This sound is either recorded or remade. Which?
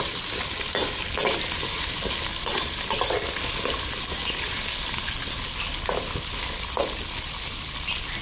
recorded